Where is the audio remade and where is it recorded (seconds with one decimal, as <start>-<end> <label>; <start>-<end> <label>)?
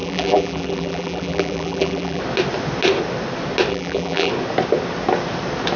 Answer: 0.0-2.2 remade; 2.2-3.7 recorded; 3.7-4.3 remade; 4.3-5.8 recorded